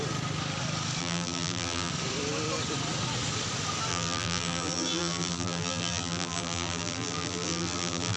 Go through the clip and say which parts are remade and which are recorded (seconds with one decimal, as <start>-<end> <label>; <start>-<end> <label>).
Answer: 0.0-1.0 recorded; 1.0-1.9 remade; 1.9-3.9 recorded; 3.9-8.2 remade